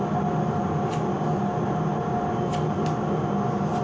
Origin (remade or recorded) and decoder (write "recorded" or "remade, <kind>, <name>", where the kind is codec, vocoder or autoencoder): recorded